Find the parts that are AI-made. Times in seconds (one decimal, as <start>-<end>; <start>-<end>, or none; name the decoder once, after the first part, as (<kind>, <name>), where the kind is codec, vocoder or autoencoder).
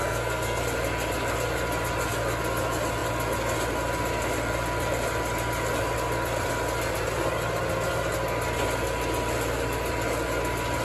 0.0-0.6 (codec, SNAC)